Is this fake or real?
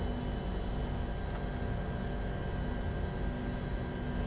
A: real